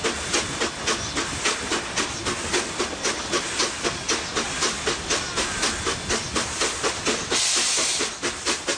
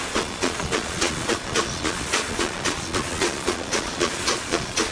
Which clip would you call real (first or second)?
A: first